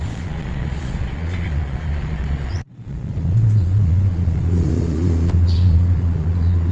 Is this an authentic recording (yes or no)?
no